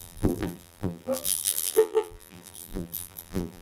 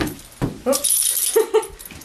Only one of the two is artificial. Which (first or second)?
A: first